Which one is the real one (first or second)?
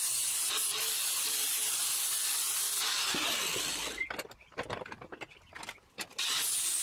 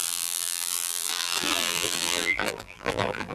first